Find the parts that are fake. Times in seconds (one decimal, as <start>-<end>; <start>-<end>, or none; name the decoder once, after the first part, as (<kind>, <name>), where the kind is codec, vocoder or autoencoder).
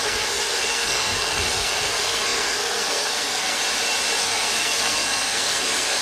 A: 0.0-3.6 (codec, SNAC); 4.2-6.0